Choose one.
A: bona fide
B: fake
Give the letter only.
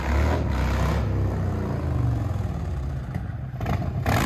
A